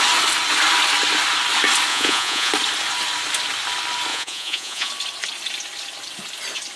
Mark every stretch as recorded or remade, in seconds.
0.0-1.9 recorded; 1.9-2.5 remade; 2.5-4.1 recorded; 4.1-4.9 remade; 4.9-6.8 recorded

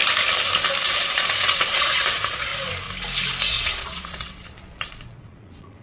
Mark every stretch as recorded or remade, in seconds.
0.0-0.9 recorded; 0.9-2.5 remade; 2.5-3.5 recorded; 3.5-5.8 remade

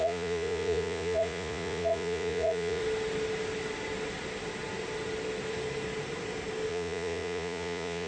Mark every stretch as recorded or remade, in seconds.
0.0-2.8 remade; 2.8-6.7 recorded; 6.7-8.1 remade

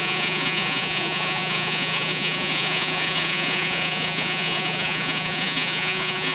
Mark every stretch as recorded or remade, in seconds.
0.0-6.3 remade

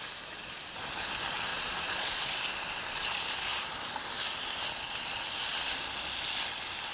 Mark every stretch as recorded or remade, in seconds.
0.0-1.5 recorded; 1.5-2.3 remade; 2.3-6.9 recorded

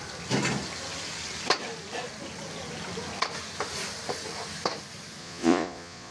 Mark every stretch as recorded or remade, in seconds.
0.0-5.2 recorded; 5.2-6.1 remade

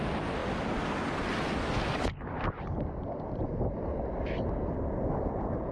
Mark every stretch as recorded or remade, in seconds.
0.0-5.7 recorded